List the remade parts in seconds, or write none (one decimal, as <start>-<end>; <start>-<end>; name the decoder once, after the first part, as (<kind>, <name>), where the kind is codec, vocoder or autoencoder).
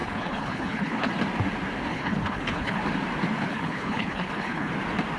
0.0-1.1 (codec, HILCodec); 1.9-2.8; 3.5-4.7